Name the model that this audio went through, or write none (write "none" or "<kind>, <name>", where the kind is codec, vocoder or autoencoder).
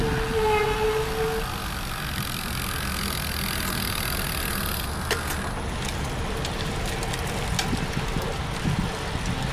none